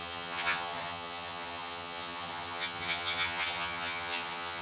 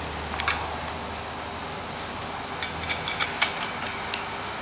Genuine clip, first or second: second